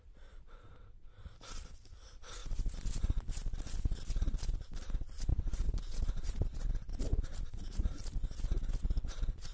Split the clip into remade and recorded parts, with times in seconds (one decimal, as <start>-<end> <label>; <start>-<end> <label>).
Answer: 0.0-5.3 recorded; 5.3-6.6 remade; 6.6-9.5 recorded